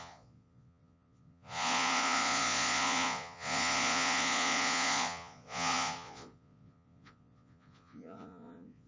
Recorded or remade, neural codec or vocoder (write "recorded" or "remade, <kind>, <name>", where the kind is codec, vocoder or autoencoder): remade, vocoder, Vocos